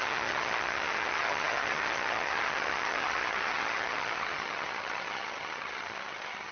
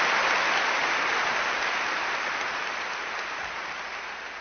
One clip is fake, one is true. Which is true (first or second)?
second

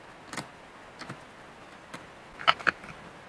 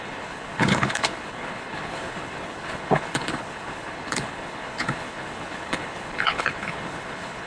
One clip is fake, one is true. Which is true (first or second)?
first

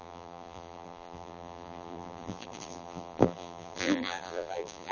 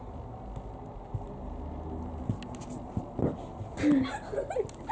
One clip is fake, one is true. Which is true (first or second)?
second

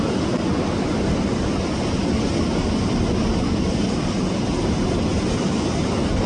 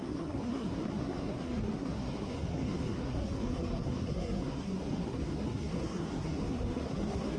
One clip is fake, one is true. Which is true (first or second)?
first